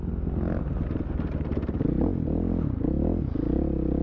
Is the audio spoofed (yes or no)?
no